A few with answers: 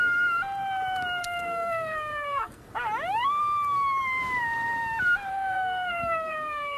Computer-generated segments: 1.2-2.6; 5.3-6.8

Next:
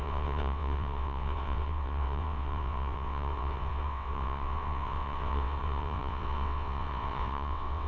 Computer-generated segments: 0.0-7.9

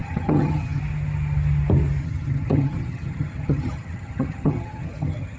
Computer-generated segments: 0.0-0.8; 2.0-5.4

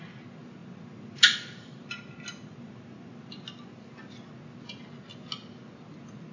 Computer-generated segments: none

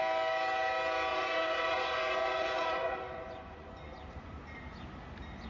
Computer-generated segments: 1.1-4.4

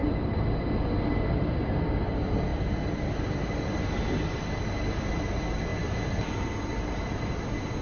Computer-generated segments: none

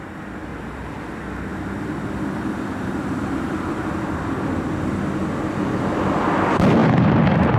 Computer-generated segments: 0.5-1.1; 1.5-4.7